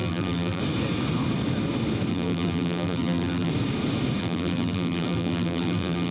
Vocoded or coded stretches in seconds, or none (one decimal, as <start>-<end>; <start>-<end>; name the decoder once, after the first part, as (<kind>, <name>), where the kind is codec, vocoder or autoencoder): 0.0-0.6 (vocoder, BigVGAN v2); 2.1-3.5; 4.2-6.1